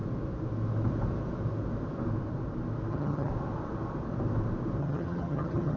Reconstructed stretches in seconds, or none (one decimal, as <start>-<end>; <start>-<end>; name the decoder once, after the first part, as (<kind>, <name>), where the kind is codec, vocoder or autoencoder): 2.9-3.3 (vocoder, HiFi-GAN); 4.8-5.8